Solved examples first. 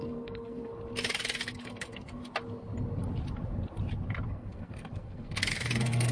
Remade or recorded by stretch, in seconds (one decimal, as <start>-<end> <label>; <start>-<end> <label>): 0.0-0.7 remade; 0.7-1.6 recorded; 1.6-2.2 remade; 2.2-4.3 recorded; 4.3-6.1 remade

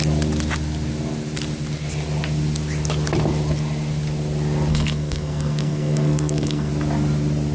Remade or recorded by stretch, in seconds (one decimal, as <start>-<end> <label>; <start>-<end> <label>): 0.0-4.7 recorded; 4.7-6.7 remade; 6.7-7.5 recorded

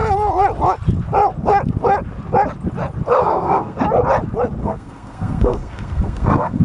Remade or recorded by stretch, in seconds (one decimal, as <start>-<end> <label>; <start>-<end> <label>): 0.0-3.2 recorded; 3.2-3.8 remade; 3.8-4.6 recorded; 4.6-6.6 remade

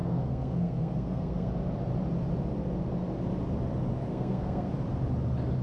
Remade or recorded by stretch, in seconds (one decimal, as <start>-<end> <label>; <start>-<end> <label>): 0.0-1.5 remade; 1.5-4.1 recorded; 4.1-4.7 remade; 4.7-5.6 recorded

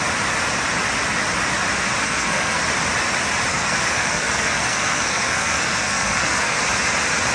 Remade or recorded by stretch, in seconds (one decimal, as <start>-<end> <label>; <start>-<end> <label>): 0.0-2.0 recorded; 2.0-2.6 remade; 2.6-3.5 recorded; 3.5-6.6 remade; 6.6-7.3 recorded

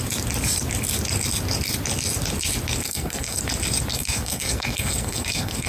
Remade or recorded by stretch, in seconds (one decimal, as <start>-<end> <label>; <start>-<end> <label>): 0.0-2.8 recorded; 2.8-3.4 remade; 3.4-3.9 recorded; 3.9-5.7 remade

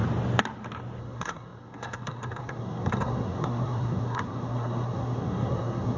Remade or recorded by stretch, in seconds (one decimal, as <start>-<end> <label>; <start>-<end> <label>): 0.0-1.0 recorded; 1.0-6.0 remade